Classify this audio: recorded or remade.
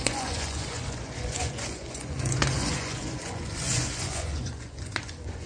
remade